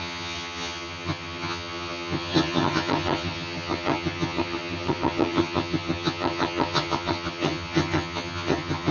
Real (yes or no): no